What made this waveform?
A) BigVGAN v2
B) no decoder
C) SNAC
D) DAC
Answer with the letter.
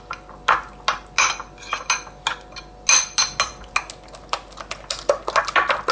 B